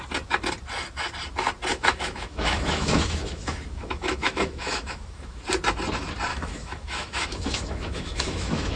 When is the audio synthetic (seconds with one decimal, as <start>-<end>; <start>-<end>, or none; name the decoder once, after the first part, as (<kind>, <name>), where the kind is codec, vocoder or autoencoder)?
1.7-5.4 (autoencoder, DAC-VAE); 6.3-8.8